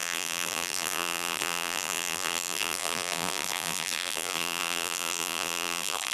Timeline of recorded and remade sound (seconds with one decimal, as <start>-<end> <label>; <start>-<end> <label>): 0.0-6.1 remade